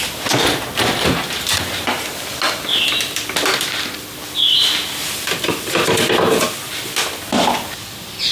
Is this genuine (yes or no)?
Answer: yes